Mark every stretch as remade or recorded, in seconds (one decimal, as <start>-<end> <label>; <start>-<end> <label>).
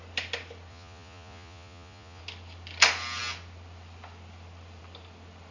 0.0-0.7 recorded; 0.7-2.2 remade; 2.2-5.5 recorded